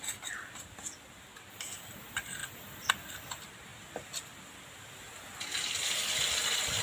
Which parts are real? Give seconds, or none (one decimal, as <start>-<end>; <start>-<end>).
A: 0.0-6.8